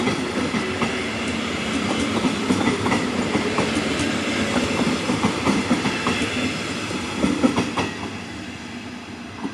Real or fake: real